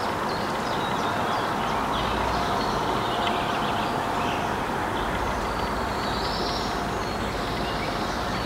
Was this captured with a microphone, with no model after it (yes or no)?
yes